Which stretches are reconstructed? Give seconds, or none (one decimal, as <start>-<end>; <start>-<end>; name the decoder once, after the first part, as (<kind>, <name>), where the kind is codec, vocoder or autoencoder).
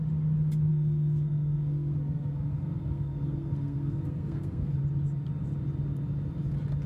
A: 0.7-4.8 (codec, SNAC)